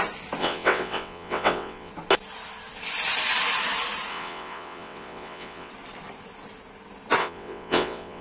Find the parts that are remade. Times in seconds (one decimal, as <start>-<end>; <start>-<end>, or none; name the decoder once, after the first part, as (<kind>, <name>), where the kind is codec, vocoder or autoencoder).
0.4-1.9 (vocoder, WaveNeXt); 4.1-5.7; 7.2-8.2